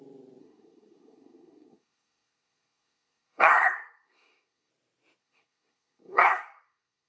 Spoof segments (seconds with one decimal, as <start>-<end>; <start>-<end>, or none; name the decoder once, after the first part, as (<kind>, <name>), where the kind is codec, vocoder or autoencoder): 0.4-4.7 (codec, SNAC); 5.2-7.1